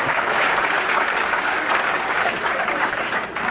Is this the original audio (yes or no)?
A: no